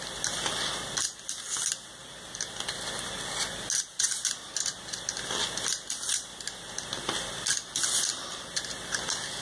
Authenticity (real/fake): real